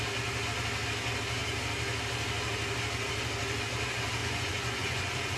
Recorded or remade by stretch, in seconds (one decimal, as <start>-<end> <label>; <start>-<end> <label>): 0.0-4.2 recorded; 4.2-5.4 remade

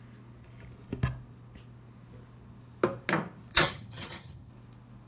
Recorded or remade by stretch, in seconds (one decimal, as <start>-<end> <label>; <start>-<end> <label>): 0.0-3.5 recorded; 3.5-4.5 remade; 4.5-5.1 recorded

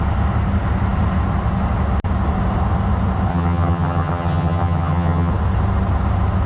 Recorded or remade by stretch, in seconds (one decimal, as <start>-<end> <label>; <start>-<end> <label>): 0.0-3.3 recorded; 3.3-5.3 remade; 5.3-6.5 recorded

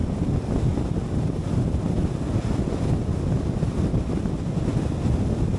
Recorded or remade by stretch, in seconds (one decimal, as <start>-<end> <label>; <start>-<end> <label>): 0.0-5.6 recorded

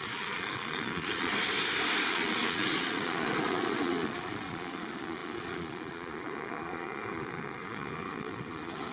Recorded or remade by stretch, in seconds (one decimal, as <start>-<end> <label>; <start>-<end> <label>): 0.0-1.3 remade; 1.3-2.1 recorded; 2.1-8.9 remade

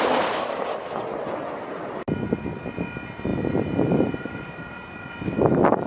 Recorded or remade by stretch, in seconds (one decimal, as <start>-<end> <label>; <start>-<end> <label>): 0.0-3.3 recorded; 3.3-5.9 remade

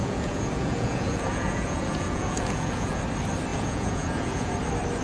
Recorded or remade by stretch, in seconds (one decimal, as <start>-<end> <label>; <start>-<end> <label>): 0.0-3.0 remade; 3.0-3.5 recorded; 3.5-4.5 remade; 4.5-5.0 recorded